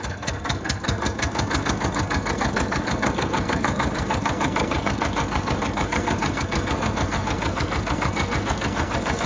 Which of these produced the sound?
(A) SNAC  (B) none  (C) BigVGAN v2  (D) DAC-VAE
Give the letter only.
A